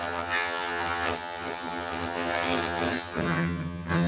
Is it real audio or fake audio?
fake